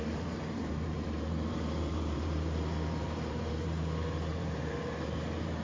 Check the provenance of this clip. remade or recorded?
remade